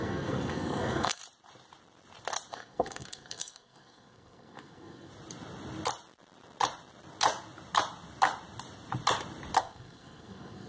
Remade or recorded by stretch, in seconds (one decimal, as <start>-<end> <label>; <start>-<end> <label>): 0.0-1.2 remade; 1.2-2.5 recorded; 2.5-5.1 remade; 5.1-9.6 recorded; 9.6-10.7 remade